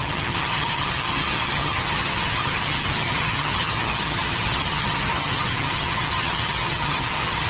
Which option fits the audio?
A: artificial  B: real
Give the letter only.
A